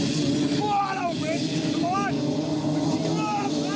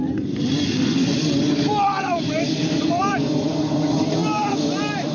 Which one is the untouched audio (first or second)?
first